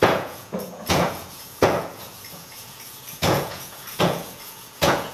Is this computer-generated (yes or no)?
yes